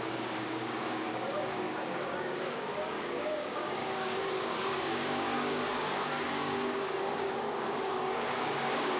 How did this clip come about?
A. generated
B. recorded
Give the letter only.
A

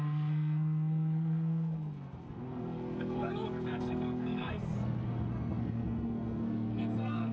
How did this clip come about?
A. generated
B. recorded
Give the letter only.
A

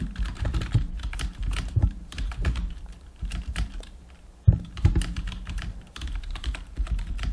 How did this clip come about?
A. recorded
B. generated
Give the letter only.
B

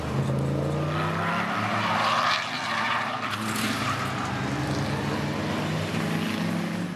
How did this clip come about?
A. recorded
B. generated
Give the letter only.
A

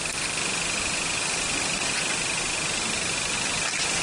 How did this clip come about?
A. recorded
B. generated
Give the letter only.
A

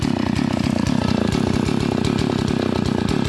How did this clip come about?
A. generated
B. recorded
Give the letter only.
B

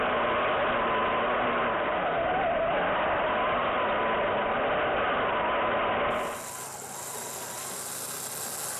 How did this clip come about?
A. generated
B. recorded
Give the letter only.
B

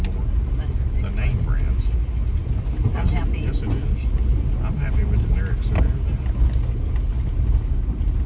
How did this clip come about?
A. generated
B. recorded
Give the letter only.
B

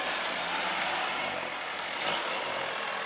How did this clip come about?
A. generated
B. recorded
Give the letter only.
B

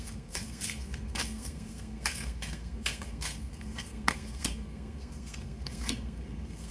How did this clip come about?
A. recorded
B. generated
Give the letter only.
B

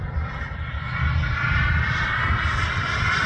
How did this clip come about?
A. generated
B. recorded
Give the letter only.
B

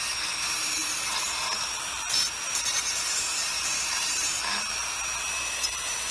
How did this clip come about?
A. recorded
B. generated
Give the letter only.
B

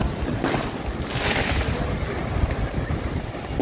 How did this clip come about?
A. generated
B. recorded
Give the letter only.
B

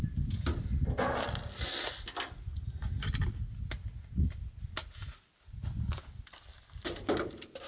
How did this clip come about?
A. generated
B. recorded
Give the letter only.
B